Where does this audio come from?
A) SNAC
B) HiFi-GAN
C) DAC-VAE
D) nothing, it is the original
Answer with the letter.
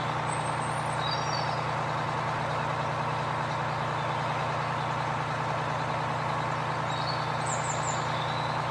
D